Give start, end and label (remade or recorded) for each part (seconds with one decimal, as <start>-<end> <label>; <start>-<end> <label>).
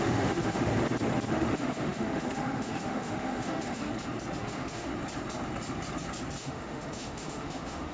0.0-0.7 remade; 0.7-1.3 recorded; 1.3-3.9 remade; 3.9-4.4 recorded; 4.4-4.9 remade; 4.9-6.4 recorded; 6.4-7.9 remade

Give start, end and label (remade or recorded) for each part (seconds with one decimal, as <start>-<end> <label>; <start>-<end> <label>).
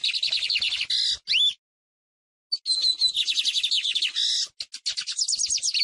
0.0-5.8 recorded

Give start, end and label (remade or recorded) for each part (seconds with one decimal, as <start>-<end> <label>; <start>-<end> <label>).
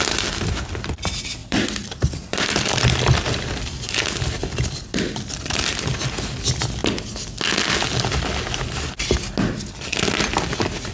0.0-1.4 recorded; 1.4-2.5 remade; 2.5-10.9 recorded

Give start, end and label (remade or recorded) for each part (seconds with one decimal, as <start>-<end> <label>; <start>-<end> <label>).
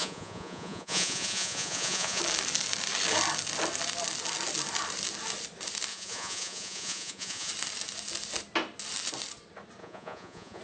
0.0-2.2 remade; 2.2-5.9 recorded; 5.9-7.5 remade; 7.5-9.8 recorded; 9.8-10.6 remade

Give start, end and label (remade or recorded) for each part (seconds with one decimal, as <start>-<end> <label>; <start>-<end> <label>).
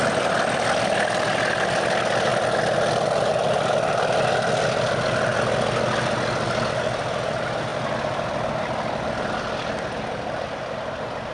0.0-11.3 recorded